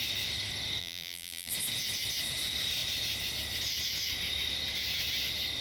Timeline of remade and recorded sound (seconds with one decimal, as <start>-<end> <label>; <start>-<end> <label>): 0.0-0.8 recorded; 0.8-1.5 remade; 1.5-5.6 recorded